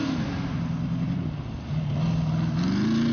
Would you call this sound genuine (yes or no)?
yes